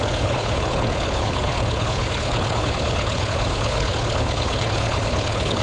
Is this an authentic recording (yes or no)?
no